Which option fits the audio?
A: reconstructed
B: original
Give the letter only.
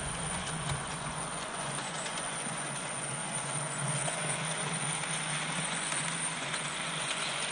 A